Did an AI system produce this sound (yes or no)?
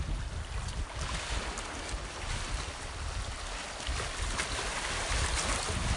no